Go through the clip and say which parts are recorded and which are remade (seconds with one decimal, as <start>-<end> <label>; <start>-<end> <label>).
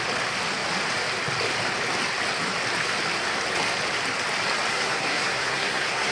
0.0-4.7 recorded; 4.7-6.1 remade